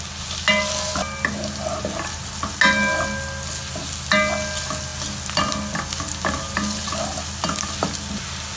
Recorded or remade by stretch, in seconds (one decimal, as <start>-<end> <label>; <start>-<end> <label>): 0.0-8.6 recorded